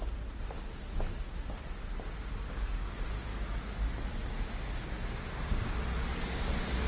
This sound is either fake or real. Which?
real